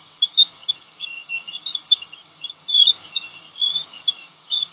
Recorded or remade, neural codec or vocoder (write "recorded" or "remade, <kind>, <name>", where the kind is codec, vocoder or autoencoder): remade, codec, DAC